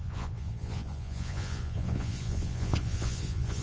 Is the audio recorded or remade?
remade